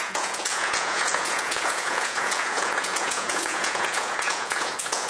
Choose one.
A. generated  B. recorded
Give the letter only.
A